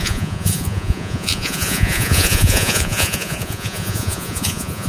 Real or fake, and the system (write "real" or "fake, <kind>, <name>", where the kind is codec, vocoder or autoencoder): fake, vocoder, Vocos